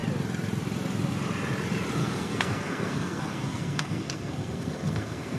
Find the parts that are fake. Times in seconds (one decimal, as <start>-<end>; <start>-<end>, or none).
2.0-5.4